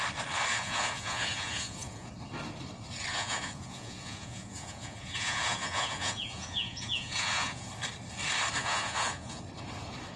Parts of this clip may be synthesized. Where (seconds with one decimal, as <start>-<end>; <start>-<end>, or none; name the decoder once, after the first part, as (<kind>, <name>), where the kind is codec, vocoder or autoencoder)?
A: 0.5-2.1 (vocoder, Vocos); 3.1-7.7; 8.6-9.4